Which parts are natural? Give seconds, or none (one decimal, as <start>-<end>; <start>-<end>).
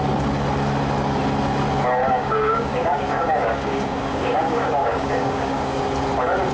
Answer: 0.0-2.0; 5.8-6.5